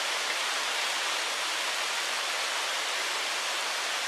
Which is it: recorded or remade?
recorded